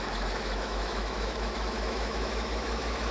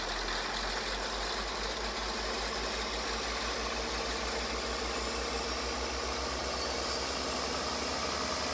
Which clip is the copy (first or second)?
first